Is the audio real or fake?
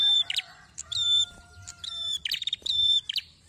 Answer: fake